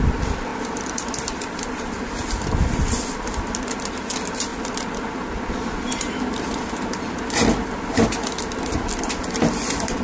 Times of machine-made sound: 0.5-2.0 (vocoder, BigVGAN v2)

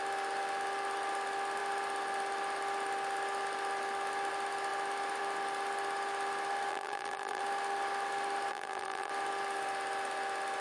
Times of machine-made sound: 6.7-7.4 (vocoder, BigVGAN v2); 8.5-9.1

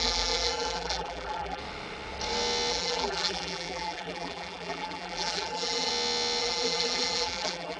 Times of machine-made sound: 0.0-1.6 (vocoder, BigVGAN v2); 2.7-5.9; 6.4-7.8

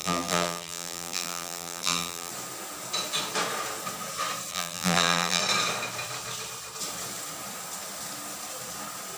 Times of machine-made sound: 0.0-2.3 (vocoder, BigVGAN v2); 4.5-5.4

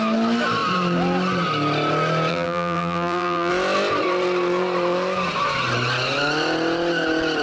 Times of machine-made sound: 2.3-3.5 (vocoder, BigVGAN v2)

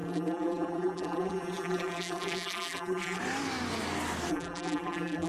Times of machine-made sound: 0.0-3.2 (vocoder, BigVGAN v2); 4.3-5.3

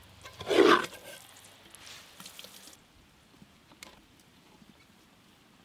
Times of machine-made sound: 3.4-5.6 (vocoder, BigVGAN v2)

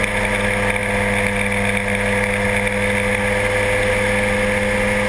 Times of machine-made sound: none